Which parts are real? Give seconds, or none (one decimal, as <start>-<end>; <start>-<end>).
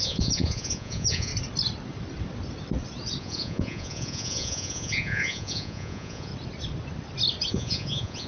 1.3-3.2; 6.3-7.5